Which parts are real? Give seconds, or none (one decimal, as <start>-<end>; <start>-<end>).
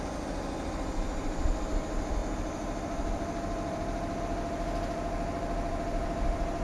0.0-6.6